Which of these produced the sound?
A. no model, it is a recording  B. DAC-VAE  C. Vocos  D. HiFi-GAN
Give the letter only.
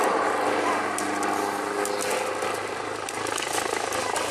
A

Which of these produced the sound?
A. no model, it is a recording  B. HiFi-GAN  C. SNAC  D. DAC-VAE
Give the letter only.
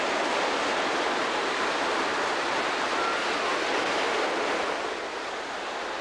A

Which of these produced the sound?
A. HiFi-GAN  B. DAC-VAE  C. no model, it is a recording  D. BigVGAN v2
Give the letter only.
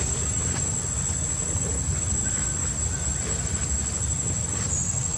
C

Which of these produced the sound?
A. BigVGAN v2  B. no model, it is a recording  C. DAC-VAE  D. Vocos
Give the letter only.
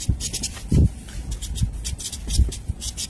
B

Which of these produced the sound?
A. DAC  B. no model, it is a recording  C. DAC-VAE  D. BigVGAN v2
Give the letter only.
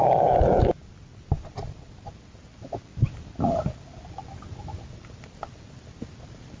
B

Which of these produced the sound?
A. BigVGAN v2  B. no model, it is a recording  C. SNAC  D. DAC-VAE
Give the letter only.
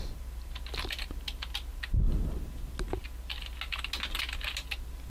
B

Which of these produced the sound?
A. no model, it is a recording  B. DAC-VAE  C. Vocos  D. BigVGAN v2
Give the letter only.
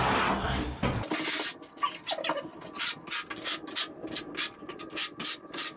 A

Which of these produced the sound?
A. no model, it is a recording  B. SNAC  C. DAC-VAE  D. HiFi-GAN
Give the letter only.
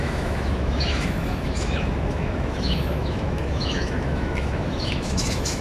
C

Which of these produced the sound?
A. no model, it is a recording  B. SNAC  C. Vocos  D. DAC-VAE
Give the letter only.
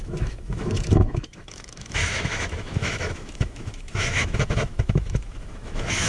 D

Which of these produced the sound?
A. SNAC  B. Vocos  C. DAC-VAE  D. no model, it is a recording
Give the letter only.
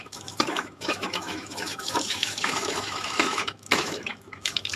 C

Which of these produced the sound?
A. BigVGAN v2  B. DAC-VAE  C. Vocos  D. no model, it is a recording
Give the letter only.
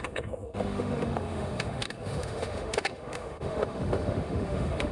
B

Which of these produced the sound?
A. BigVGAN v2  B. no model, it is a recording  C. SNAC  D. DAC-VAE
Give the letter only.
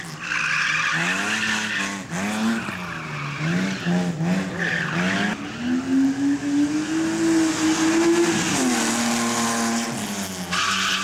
B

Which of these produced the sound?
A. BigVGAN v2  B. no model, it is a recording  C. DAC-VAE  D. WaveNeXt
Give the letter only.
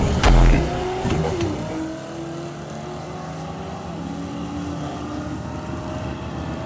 B